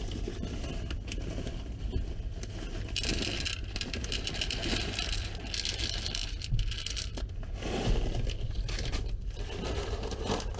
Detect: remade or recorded recorded